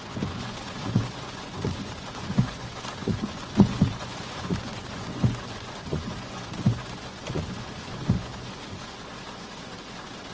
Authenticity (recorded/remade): remade